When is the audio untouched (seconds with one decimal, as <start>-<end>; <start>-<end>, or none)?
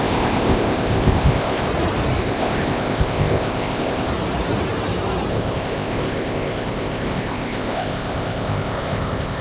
1.7-2.2; 4.1-5.3